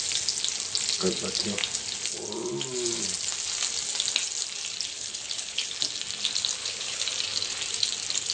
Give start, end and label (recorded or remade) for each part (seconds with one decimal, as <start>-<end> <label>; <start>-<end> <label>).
0.0-4.9 recorded; 4.9-5.7 remade; 5.7-6.6 recorded; 6.6-7.1 remade; 7.1-8.3 recorded